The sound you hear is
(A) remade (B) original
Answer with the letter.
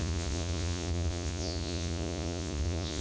A